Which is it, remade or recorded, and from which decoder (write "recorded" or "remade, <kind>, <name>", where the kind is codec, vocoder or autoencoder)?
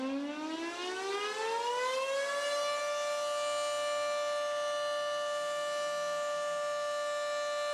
recorded